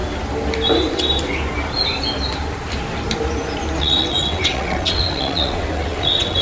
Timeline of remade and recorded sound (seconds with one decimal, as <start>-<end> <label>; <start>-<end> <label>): 0.0-3.8 recorded; 3.8-6.4 remade